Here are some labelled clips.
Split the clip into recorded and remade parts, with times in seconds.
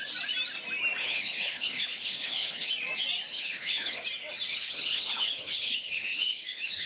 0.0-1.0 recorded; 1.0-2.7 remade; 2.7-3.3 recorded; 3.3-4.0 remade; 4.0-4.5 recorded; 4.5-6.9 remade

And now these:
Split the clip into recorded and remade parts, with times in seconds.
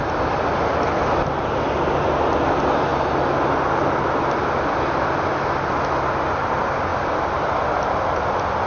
0.0-8.7 recorded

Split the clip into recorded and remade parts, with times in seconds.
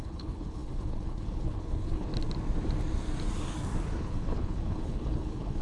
0.0-2.1 remade; 2.1-4.0 recorded; 4.0-5.6 remade